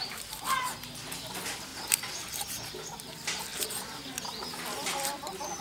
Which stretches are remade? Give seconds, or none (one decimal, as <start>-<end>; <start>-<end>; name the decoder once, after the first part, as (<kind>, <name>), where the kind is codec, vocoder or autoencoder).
none